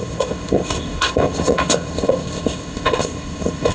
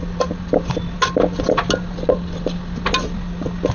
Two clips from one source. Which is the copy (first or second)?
first